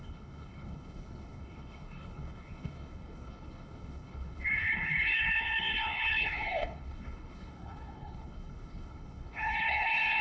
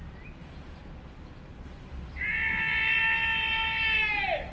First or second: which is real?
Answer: second